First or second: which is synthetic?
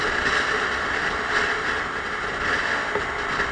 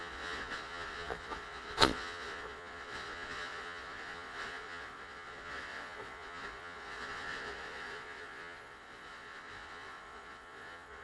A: second